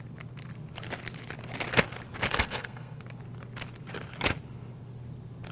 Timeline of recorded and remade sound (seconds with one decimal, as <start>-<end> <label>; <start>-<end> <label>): 0.0-2.3 recorded; 2.3-3.0 remade; 3.0-5.5 recorded